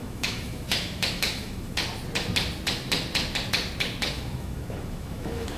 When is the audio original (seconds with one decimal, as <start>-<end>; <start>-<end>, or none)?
1.8-4.1

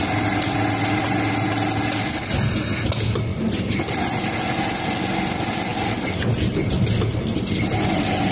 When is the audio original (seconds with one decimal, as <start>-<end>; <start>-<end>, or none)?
0.0-8.3

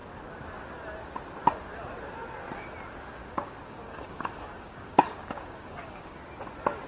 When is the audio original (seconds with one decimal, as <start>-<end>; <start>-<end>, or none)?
0.0-3.2; 6.2-6.9

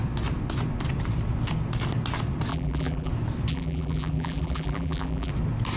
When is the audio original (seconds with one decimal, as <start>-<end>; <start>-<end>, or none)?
0.0-2.5; 3.1-3.5; 5.3-5.8

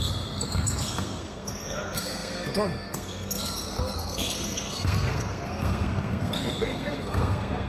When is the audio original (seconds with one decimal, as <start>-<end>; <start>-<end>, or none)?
none